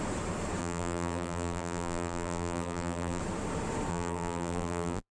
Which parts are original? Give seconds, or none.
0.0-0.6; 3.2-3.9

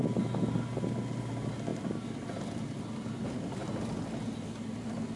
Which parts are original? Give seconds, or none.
0.0-5.2